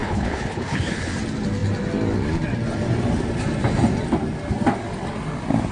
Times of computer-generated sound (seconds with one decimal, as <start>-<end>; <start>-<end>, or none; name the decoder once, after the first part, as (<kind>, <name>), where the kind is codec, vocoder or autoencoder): 0.0-1.1 (codec, HILCodec)